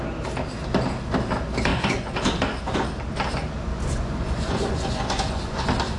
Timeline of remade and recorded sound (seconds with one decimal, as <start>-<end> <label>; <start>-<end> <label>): 0.0-1.7 recorded; 1.7-2.3 remade; 2.3-3.7 recorded; 3.7-5.6 remade; 5.6-6.0 recorded